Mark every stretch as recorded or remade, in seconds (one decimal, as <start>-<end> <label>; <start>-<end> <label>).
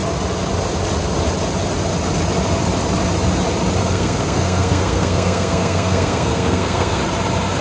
0.0-3.8 recorded; 3.8-7.0 remade; 7.0-7.6 recorded